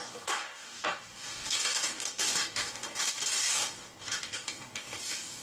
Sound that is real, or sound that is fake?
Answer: fake